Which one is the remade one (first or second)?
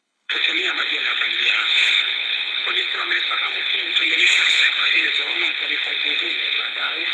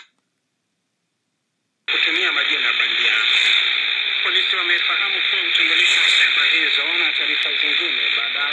first